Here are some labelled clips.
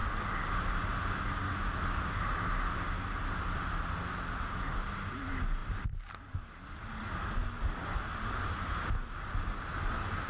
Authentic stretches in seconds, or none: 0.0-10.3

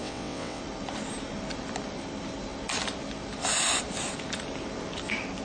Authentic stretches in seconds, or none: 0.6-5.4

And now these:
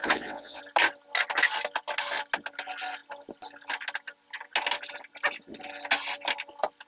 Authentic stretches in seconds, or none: 0.6-6.9